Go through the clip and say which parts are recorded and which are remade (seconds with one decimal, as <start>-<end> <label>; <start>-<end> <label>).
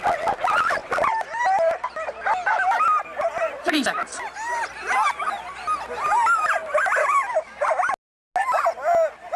0.0-7.2 remade; 7.2-9.4 recorded